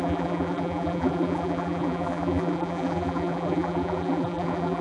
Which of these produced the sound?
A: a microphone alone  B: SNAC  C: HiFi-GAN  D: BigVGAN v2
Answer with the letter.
D